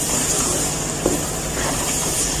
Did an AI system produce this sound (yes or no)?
yes